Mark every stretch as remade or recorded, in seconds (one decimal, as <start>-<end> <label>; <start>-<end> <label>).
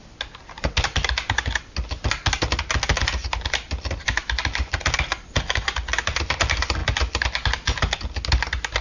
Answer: 0.0-8.8 recorded